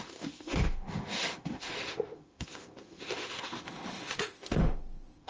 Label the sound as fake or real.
fake